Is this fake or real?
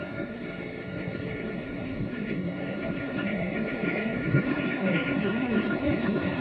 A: fake